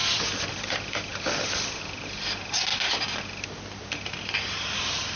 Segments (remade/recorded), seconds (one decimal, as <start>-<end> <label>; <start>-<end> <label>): 0.0-1.8 remade; 1.8-5.2 recorded